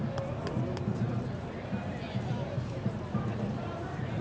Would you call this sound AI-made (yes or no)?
yes